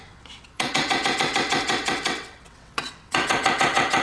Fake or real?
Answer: fake